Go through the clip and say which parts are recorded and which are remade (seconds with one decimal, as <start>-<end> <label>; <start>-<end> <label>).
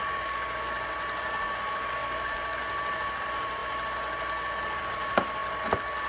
0.0-6.1 recorded